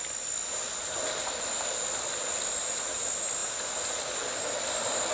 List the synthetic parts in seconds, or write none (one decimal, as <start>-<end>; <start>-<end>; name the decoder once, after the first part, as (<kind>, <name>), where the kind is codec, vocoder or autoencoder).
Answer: none